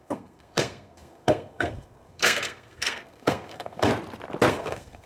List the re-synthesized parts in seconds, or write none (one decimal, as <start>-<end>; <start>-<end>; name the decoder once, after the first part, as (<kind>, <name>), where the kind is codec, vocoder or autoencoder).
0.0-3.9 (codec, SNAC); 4.5-5.1